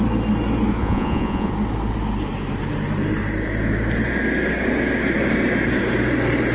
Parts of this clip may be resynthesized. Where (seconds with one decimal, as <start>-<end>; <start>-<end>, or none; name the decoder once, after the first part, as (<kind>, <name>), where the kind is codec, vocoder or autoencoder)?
0.8-1.5 (vocoder, Vocos)